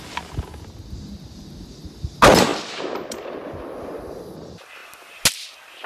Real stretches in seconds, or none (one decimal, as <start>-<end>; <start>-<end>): 0.0-5.9